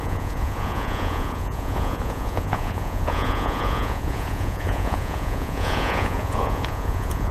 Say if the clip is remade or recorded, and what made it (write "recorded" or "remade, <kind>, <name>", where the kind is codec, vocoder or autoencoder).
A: remade, vocoder, Vocos